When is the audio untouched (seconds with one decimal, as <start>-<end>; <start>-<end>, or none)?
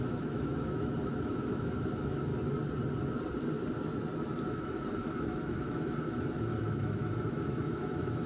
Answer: 2.3-4.5